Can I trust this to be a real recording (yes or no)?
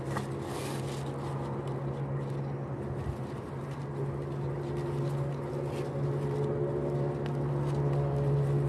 yes